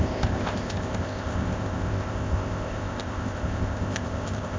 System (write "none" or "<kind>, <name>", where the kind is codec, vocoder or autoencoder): codec, ZipCodec